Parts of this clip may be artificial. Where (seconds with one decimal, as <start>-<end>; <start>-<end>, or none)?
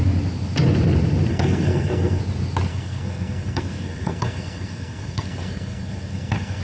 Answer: 1.3-2.2; 2.7-6.6